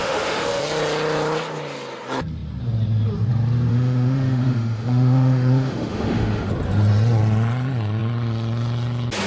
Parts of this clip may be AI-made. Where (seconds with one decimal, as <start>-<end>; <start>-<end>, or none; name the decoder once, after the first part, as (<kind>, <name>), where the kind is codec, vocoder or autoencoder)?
0.0-0.6 (autoencoder, DAC-VAE); 3.7-6.5